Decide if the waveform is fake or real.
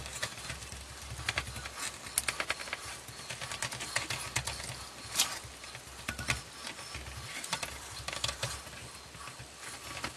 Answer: real